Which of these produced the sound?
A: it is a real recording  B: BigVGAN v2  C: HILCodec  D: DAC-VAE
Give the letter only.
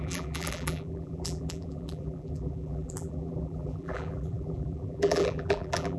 B